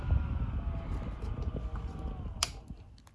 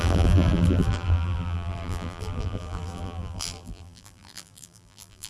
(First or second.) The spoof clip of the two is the second